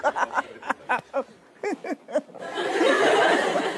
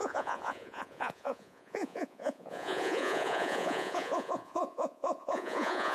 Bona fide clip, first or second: first